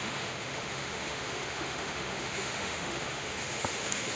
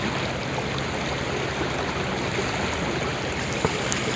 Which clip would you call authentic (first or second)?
second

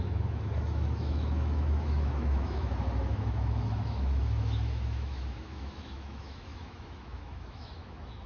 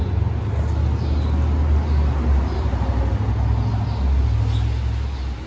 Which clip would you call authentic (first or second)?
second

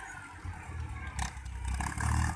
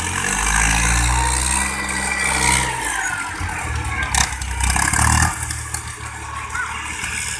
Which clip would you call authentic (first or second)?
second